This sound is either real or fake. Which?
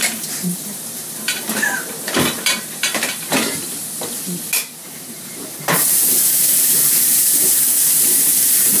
fake